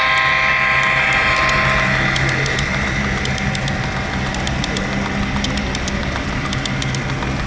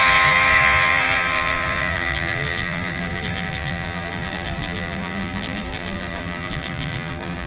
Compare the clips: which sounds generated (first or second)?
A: second